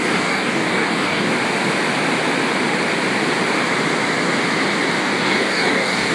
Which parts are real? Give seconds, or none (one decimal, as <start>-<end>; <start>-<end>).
1.3-5.0

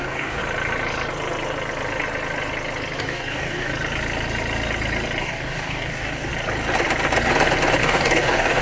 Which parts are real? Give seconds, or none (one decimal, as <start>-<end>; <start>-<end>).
0.4-3.0; 3.7-5.2; 6.3-7.8

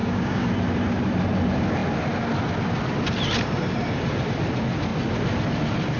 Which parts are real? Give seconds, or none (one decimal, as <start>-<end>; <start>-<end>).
0.5-6.0